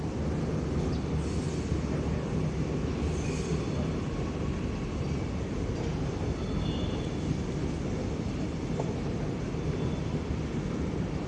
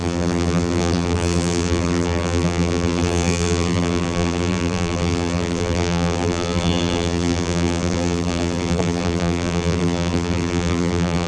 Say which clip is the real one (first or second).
first